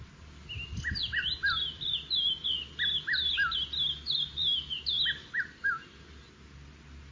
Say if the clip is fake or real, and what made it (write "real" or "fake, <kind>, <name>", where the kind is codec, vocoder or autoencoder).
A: real